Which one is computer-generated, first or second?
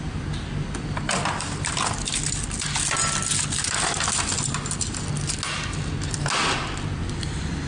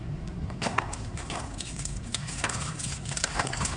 second